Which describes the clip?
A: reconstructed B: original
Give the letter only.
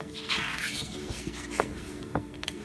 A